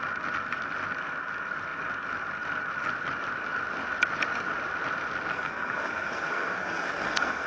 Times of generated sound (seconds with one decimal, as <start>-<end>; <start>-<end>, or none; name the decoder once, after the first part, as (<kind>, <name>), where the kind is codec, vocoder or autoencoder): 5.3-7.5 (codec, SNAC)